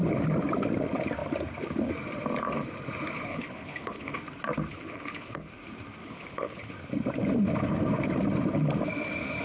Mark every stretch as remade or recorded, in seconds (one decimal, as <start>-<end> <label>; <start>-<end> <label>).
0.0-3.3 recorded; 3.3-4.2 remade; 4.2-4.7 recorded; 4.7-5.5 remade; 5.5-6.0 recorded; 6.0-6.7 remade; 6.7-9.4 recorded